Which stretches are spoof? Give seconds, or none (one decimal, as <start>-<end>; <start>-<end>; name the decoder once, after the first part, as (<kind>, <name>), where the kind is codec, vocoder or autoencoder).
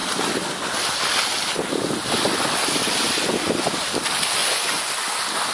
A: 4.4-4.9 (vocoder, Vocos)